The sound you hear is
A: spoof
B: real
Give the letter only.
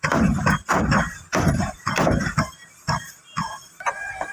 A